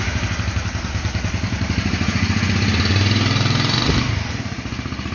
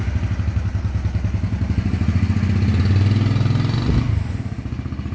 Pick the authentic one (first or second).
second